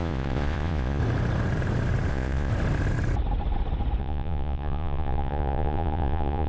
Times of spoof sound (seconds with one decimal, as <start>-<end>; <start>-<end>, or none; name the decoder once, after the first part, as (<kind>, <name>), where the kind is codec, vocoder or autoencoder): 0.0-1.0 (vocoder, Vocos); 2.1-2.5; 4.0-6.5